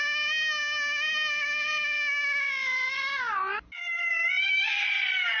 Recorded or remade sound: recorded